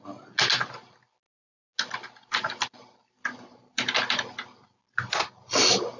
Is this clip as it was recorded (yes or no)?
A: yes